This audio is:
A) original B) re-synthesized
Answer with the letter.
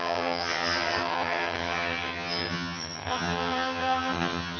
B